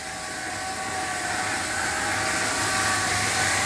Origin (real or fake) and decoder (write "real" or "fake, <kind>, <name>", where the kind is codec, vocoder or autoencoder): real